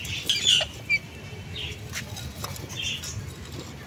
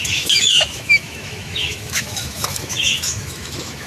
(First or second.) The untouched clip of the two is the first